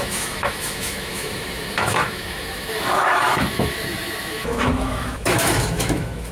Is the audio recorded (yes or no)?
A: no